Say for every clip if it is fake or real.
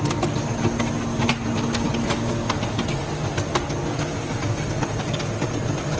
real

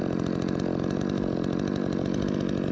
real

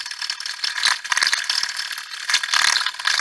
real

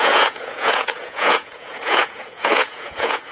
fake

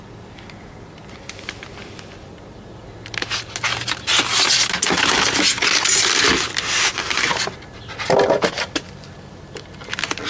real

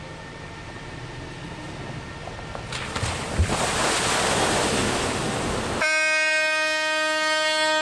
real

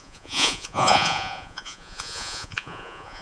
fake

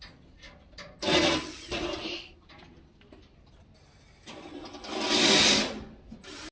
real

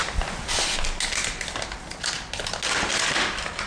real